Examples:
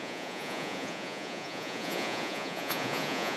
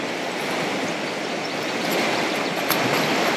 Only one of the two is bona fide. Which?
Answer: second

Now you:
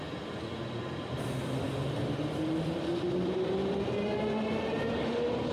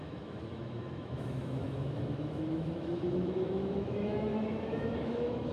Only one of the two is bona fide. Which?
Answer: first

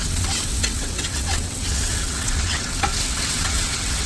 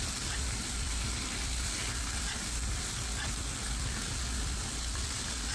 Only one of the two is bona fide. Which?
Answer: second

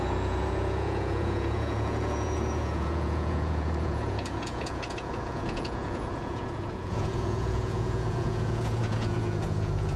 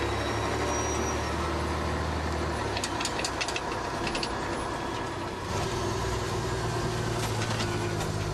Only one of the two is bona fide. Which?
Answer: second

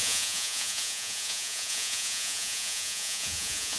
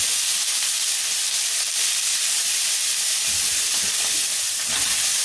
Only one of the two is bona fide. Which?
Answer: second